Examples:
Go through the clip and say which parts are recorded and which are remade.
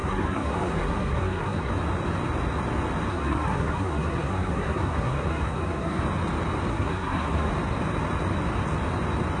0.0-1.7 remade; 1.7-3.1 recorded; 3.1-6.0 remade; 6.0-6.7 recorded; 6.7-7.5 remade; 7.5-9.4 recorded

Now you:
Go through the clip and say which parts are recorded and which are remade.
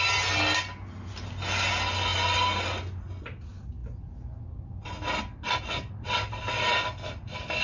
0.0-7.6 recorded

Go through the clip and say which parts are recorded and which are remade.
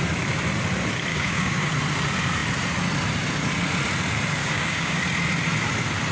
0.0-1.1 recorded; 1.1-1.7 remade; 1.7-4.4 recorded; 4.4-5.0 remade; 5.0-6.1 recorded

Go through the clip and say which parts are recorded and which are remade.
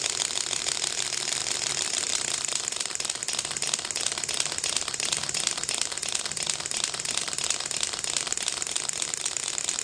0.0-1.4 recorded; 1.4-3.2 remade; 3.2-9.8 recorded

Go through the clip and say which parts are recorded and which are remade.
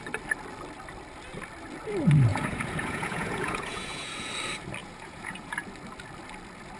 0.0-2.3 recorded; 2.3-4.3 remade; 4.3-4.8 recorded; 4.8-5.7 remade; 5.7-6.8 recorded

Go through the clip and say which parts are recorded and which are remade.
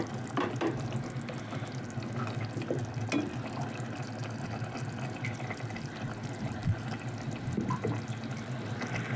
0.0-9.2 recorded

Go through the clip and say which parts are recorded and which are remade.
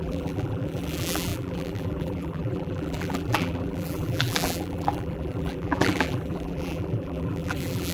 0.0-7.9 remade